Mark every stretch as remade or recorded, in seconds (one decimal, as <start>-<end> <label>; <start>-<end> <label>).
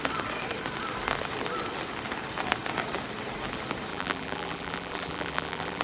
0.0-3.9 recorded; 3.9-5.8 remade